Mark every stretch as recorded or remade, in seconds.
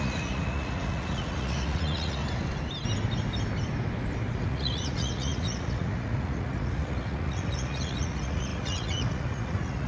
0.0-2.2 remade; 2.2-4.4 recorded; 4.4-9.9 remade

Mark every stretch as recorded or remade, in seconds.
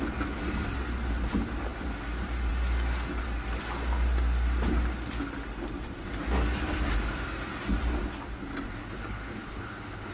0.0-8.8 recorded; 8.8-10.1 remade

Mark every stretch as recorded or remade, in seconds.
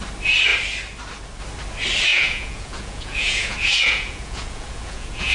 0.0-2.1 recorded; 2.1-5.3 remade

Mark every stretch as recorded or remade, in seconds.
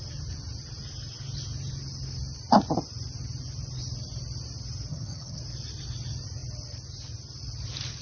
0.0-4.9 recorded; 4.9-5.4 remade; 5.4-8.0 recorded